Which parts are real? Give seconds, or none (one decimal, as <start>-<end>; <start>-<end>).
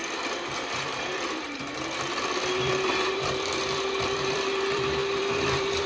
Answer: none